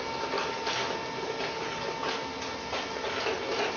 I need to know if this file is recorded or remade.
recorded